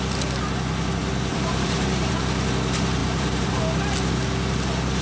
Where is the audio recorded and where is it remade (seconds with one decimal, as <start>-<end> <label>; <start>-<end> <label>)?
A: 0.0-1.3 recorded; 1.3-2.1 remade; 2.1-3.0 recorded; 3.0-3.6 remade; 3.6-5.0 recorded